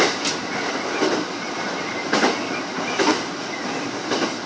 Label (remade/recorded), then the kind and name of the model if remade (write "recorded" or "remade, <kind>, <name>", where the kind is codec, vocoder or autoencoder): recorded